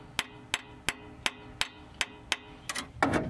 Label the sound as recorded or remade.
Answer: recorded